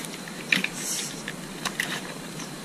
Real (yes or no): no